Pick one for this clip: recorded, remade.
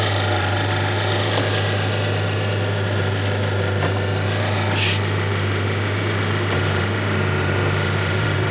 recorded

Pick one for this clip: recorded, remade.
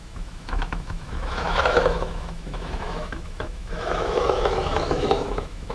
remade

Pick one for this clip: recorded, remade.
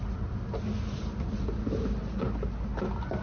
recorded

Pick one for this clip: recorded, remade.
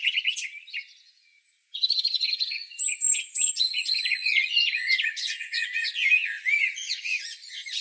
remade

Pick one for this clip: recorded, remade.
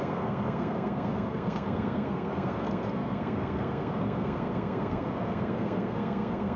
remade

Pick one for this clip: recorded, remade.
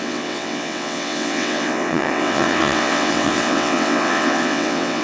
remade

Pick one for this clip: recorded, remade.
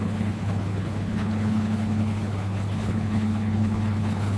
remade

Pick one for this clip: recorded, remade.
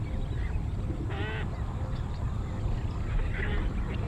recorded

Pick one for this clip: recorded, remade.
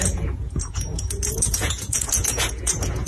remade